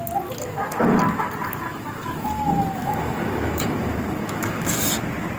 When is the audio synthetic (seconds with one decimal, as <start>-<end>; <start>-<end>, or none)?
1.7-4.9